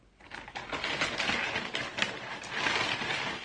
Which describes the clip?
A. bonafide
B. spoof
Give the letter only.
A